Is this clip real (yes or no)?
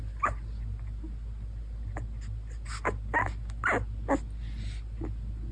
yes